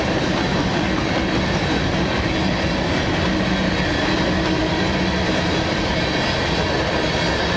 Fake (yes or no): no